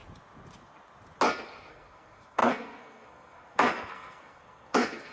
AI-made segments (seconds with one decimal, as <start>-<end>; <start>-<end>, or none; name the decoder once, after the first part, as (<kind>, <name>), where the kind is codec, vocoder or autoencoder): 1.7-5.1 (codec, SNAC)